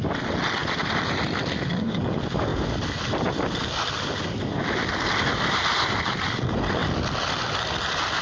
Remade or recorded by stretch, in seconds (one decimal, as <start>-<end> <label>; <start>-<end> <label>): 0.0-0.6 recorded; 0.6-1.5 remade; 1.5-8.2 recorded